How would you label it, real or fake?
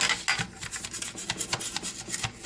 real